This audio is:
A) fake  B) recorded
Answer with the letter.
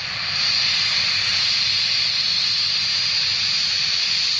B